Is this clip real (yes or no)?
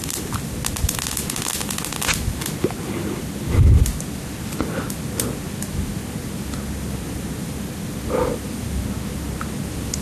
yes